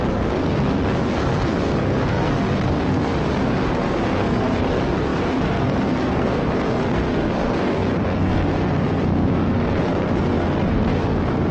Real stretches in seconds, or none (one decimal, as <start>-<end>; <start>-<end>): none